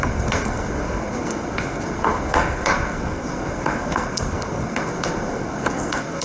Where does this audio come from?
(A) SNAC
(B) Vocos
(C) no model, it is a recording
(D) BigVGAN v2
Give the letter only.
A